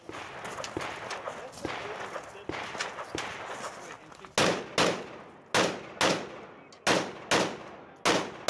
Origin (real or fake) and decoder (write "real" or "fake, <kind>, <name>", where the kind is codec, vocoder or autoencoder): real